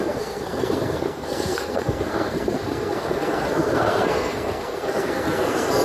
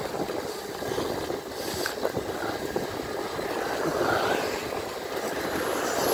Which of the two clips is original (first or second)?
second